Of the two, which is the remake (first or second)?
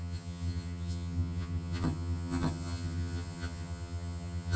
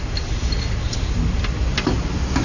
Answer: first